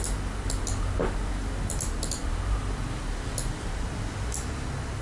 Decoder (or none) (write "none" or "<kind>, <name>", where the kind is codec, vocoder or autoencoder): none